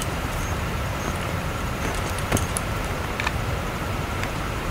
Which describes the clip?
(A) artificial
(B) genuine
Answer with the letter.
A